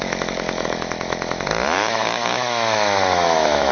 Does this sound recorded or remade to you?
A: remade